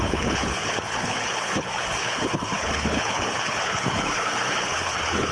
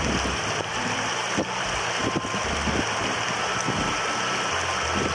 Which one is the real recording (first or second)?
second